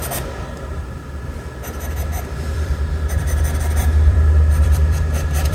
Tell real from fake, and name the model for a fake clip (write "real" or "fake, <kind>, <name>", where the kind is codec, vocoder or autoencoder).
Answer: fake, vocoder, BigVGAN v2